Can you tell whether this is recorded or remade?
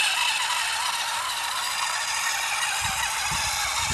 recorded